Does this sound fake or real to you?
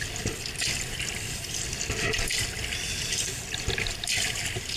real